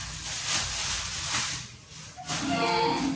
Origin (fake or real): fake